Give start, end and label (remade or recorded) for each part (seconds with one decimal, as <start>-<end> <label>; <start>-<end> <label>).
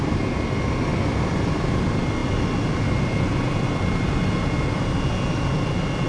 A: 0.0-6.1 recorded